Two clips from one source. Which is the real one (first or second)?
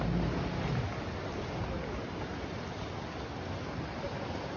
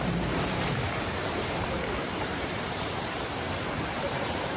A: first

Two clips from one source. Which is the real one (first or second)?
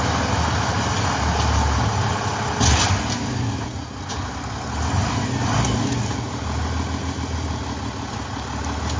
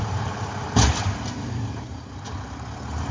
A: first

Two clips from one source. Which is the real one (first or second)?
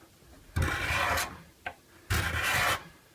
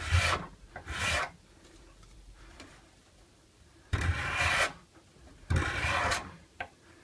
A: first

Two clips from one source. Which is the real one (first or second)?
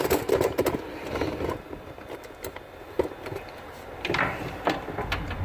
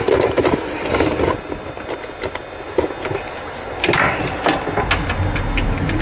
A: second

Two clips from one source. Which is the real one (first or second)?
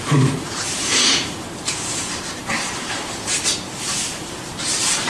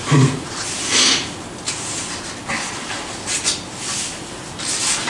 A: second